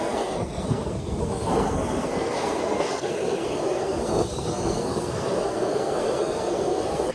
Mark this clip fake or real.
fake